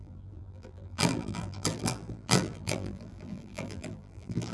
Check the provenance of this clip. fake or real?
fake